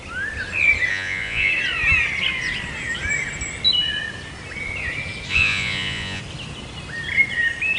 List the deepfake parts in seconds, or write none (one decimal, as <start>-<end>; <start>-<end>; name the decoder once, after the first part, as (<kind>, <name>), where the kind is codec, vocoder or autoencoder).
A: 0.9-1.5 (vocoder, Vocos); 5.3-6.2